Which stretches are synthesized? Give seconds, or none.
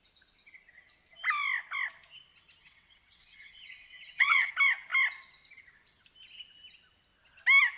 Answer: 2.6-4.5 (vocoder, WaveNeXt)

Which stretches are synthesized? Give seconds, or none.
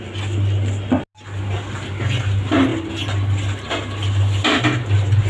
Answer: none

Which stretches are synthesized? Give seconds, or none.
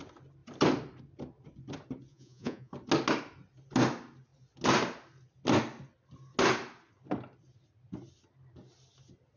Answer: 2.1-2.7 (vocoder, Vocos)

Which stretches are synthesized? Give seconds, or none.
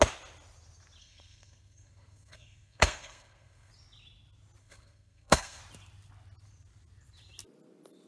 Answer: 1.0-3.7 (codec, SNAC); 4.6-5.6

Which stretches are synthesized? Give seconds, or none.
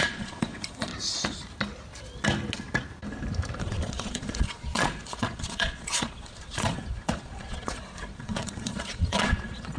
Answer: 0.0-0.9 (vocoder, Vocos); 3.6-9.8